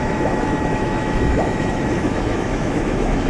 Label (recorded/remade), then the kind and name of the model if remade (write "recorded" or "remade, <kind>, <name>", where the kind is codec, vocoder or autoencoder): remade, autoencoder, DAC-VAE